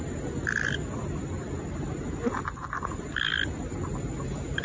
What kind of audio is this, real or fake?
real